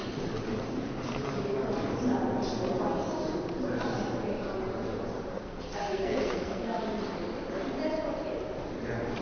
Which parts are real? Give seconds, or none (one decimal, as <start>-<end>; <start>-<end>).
0.0-5.3; 6.8-9.2